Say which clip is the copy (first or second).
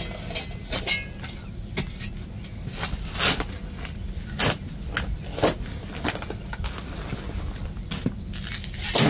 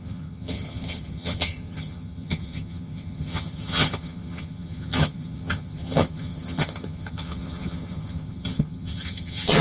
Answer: second